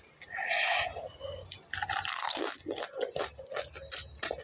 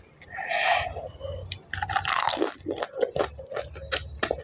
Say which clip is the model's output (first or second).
second